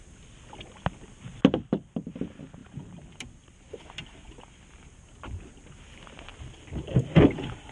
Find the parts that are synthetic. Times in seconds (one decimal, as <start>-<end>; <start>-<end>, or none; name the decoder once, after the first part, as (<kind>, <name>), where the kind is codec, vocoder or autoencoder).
2.6-3.8 (vocoder, BigVGAN v2); 6.3-7.7